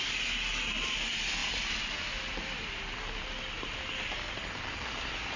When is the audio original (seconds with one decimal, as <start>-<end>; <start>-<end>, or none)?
0.0-5.4